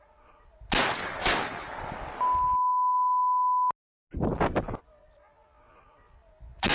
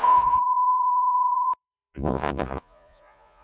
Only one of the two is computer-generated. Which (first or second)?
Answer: second